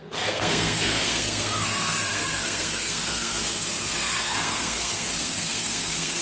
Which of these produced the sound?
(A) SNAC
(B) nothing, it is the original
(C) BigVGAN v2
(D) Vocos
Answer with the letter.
A